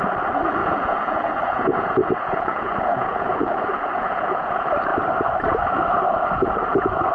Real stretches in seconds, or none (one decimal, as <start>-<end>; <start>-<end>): 0.0-0.6; 4.5-7.1